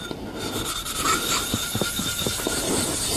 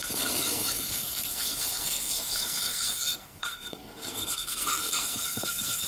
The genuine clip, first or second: first